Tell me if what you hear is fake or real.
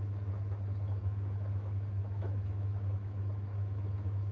fake